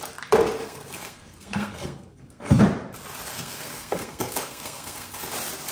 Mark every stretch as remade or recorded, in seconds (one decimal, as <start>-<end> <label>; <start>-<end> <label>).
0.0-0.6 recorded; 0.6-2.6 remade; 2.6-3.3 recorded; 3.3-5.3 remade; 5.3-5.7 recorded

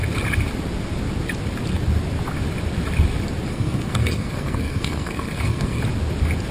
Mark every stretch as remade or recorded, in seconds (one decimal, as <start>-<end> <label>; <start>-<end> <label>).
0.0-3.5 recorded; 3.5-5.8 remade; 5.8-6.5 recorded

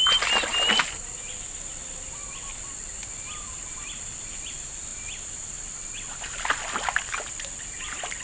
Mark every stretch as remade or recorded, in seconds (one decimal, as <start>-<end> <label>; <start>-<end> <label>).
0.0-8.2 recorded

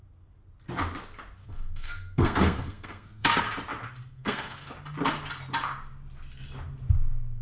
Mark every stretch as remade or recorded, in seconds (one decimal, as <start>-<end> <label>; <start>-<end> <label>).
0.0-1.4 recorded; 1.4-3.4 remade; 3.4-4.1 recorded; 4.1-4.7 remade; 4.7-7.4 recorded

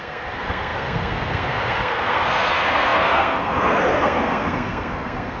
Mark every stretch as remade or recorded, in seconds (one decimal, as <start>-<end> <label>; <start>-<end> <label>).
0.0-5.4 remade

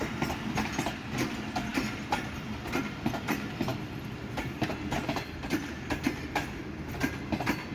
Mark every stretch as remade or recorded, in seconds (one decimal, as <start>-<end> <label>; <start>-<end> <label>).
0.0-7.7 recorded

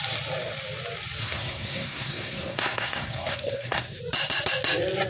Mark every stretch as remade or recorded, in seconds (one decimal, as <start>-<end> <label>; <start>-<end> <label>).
0.0-1.2 recorded; 1.2-4.0 remade; 4.0-5.1 recorded